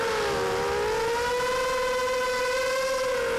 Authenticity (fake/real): real